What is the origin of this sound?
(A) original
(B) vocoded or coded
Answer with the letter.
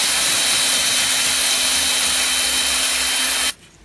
A